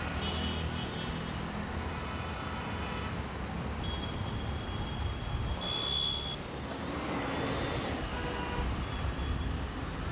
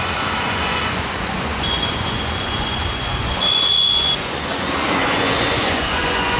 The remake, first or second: second